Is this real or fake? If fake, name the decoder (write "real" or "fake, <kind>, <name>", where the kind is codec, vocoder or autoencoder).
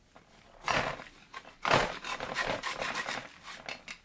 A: real